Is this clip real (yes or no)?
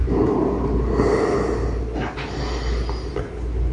yes